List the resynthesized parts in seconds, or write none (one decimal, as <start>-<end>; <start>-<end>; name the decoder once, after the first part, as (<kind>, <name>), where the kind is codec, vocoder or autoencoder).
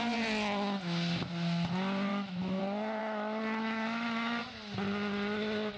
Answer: 2.1-2.6 (autoencoder, DAC-VAE); 3.0-4.4